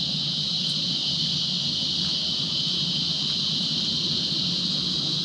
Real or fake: real